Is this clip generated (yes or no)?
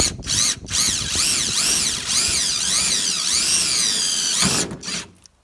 no